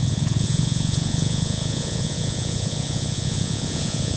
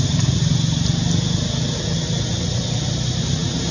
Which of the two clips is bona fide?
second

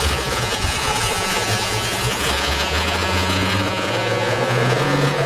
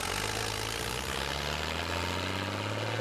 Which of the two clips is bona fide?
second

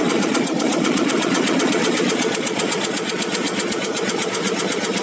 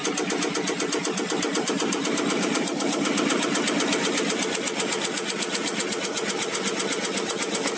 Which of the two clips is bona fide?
second